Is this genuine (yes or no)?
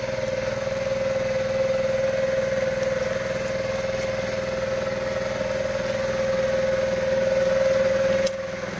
yes